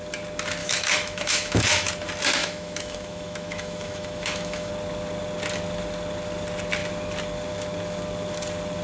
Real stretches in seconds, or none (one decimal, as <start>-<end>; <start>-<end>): 0.0-0.6; 1.9-2.4; 4.7-8.8